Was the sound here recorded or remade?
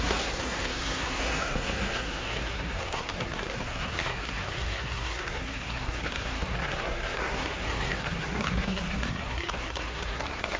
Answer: remade